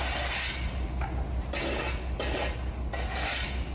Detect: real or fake real